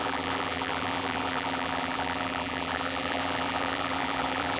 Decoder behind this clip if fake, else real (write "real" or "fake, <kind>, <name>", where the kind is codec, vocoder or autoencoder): fake, vocoder, BigVGAN v2